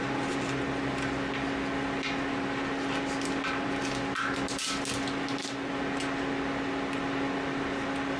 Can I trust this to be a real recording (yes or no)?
yes